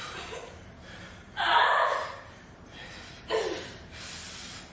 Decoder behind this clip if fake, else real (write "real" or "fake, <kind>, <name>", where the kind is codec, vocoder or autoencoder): fake, vocoder, BigVGAN v2